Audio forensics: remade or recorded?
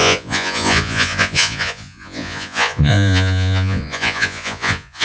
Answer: remade